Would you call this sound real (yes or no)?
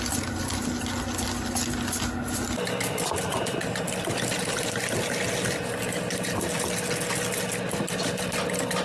yes